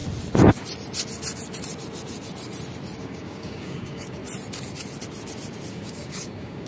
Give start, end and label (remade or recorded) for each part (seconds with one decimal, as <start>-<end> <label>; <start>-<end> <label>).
0.0-3.0 recorded; 3.0-4.2 remade; 4.2-5.7 recorded; 5.7-6.7 remade